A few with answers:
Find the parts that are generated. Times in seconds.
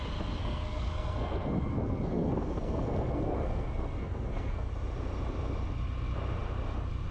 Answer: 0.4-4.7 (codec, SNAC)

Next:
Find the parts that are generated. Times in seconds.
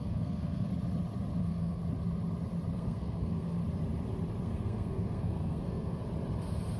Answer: 0.0-0.7 (codec, SNAC); 1.4-1.8; 2.7-3.6; 4.4-6.0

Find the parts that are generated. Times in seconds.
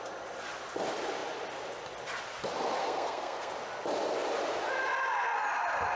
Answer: 2.8-3.5 (codec, SNAC)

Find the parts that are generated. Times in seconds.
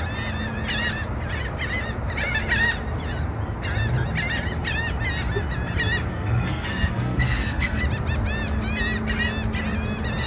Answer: 6.1-7.8 (codec, SNAC)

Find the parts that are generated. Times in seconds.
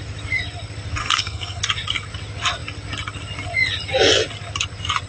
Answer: 1.0-1.6 (codec, SNAC)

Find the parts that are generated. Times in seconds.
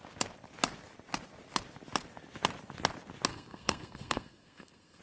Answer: 3.3-5.0 (codec, SNAC)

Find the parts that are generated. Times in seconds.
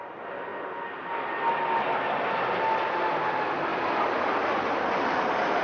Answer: none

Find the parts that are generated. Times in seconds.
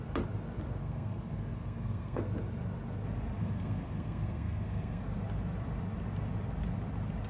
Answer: 0.8-2.2 (codec, SNAC); 3.4-5.0